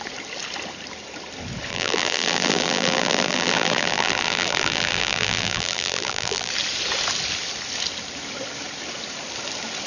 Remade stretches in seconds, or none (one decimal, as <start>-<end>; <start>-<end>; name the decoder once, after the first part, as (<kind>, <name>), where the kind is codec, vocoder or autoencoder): 1.7-6.5 (vocoder, BigVGAN v2)